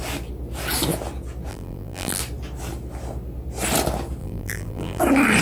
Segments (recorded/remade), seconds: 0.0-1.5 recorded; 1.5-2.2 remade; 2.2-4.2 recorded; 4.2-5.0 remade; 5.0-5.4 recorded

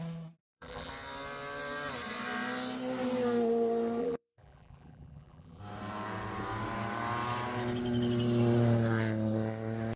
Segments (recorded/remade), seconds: 0.0-0.4 recorded; 0.4-0.9 remade; 0.9-4.0 recorded; 4.0-5.6 remade; 5.6-10.0 recorded

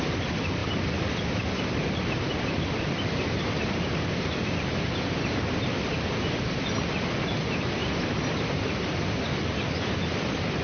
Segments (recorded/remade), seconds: 0.0-0.6 recorded; 0.6-4.1 remade; 4.1-7.8 recorded; 7.8-8.5 remade; 8.5-10.6 recorded

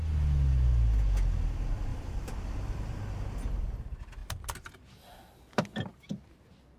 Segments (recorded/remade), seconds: 0.0-1.9 recorded; 1.9-3.0 remade; 3.0-6.8 recorded

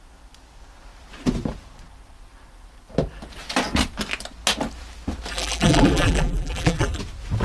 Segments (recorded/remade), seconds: 0.0-5.3 recorded; 5.3-7.0 remade; 7.0-7.4 recorded

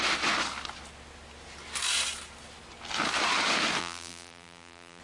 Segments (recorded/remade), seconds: 0.0-3.8 recorded; 3.8-5.0 remade

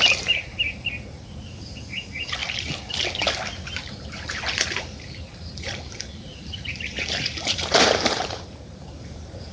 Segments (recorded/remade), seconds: 0.0-2.4 remade; 2.4-3.7 recorded; 3.7-9.5 remade

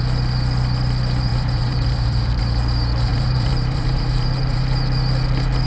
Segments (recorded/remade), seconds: 0.0-1.3 recorded; 1.3-2.4 remade; 2.4-3.1 recorded; 3.1-4.6 remade; 4.6-5.7 recorded